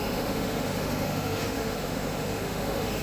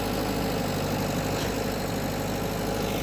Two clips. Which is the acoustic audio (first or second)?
second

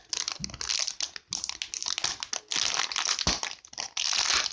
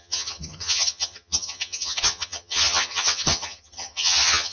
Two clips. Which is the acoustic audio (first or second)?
first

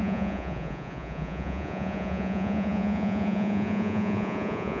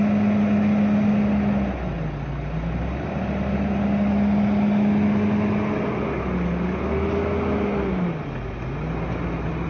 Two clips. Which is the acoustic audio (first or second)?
second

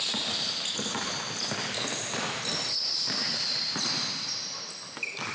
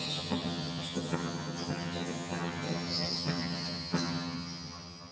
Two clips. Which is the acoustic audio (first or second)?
first